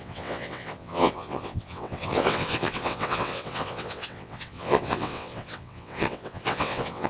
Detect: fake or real fake